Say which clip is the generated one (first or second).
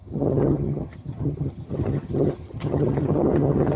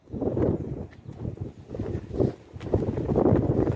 first